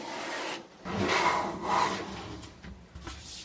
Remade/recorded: recorded